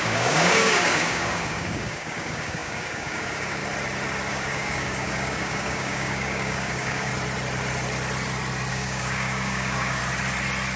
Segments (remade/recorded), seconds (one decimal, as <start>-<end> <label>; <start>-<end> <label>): 0.0-3.6 remade; 3.6-4.3 recorded; 4.3-7.1 remade; 7.1-8.7 recorded; 8.7-10.0 remade; 10.0-10.8 recorded